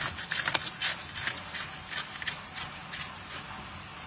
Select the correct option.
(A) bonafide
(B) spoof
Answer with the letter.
A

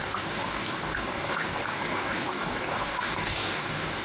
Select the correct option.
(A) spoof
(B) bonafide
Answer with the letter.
A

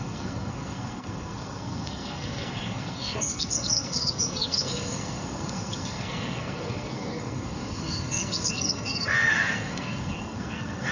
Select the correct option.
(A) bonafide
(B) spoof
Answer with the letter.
B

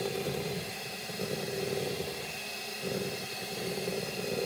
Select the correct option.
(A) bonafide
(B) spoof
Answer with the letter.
B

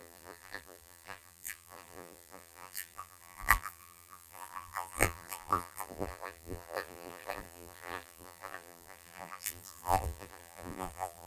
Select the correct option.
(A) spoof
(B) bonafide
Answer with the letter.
A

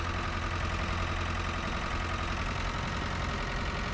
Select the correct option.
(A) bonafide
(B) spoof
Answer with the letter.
A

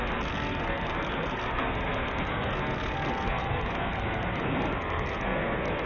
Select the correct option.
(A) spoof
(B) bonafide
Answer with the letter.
A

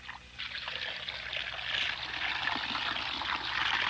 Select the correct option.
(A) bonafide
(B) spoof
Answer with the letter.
A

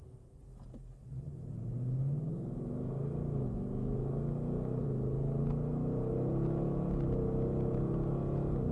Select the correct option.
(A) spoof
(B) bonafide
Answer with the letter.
B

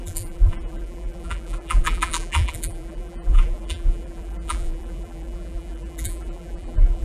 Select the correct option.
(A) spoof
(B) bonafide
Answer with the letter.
A